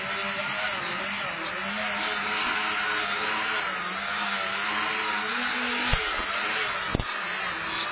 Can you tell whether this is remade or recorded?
recorded